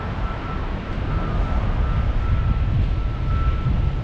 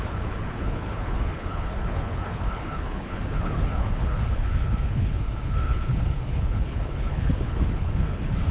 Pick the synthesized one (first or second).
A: second